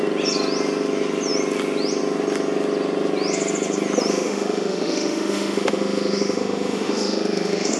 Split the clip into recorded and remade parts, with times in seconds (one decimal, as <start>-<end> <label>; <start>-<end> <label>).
0.0-4.1 recorded; 4.1-7.8 remade